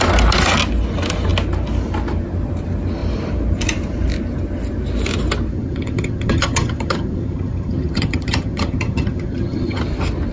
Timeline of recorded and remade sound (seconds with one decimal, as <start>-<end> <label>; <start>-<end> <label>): 0.0-5.5 recorded; 5.5-9.8 remade; 9.8-10.3 recorded